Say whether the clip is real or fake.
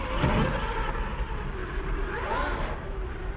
real